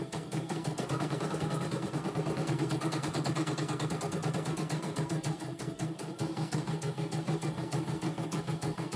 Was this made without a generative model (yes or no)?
no